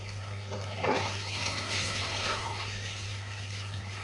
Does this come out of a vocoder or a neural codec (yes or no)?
yes